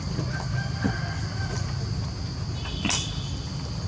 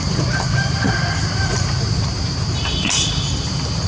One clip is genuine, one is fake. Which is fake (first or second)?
second